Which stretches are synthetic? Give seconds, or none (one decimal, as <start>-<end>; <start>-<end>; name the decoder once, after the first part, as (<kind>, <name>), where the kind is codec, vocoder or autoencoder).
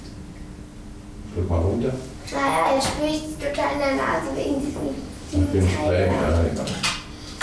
none